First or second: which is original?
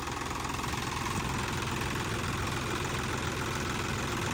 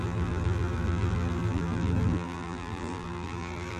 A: first